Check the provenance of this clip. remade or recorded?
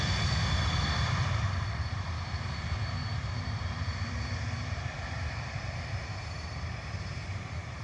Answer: remade